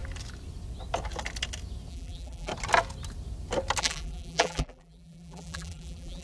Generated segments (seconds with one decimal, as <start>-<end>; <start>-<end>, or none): 1.9-2.5; 3.8-6.2

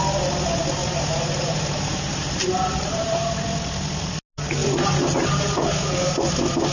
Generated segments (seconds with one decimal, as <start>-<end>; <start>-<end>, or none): 0.8-3.3; 4.6-5.5

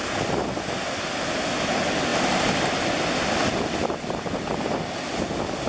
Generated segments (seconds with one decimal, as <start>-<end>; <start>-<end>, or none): none

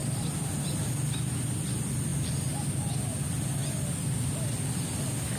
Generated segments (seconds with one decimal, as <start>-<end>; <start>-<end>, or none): 1.6-3.6

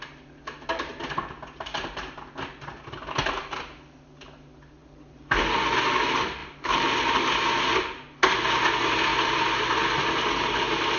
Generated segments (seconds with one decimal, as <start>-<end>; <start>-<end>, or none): 4.8-5.4; 6.4-7.1

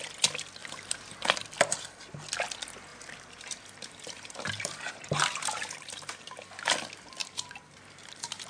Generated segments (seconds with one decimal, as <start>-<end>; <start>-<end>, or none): 0.6-1.3; 2.9-6.1; 7.2-8.5

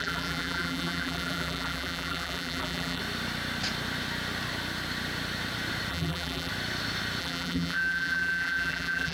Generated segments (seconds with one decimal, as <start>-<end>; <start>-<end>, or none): 0.0-3.0; 5.9-6.5; 7.2-9.1

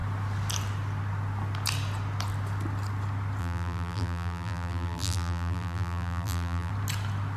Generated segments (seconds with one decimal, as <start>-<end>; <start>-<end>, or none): 3.4-6.7